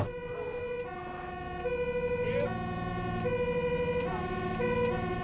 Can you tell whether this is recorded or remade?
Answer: recorded